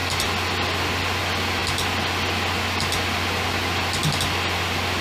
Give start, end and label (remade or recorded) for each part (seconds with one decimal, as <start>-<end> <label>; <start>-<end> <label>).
0.0-5.0 recorded